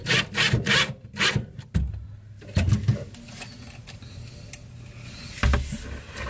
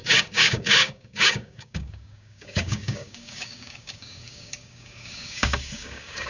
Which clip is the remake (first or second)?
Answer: second